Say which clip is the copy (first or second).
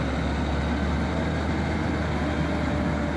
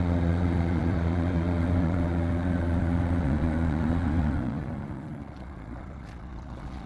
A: second